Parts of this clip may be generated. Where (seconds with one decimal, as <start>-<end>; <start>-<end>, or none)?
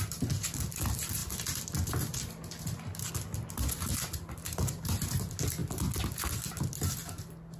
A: none